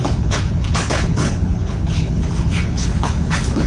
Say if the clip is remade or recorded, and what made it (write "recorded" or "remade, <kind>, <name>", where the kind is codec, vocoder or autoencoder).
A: remade, codec, HILCodec